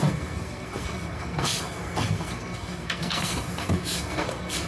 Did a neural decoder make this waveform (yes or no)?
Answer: yes